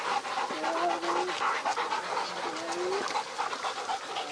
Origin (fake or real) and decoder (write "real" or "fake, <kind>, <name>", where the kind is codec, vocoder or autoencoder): real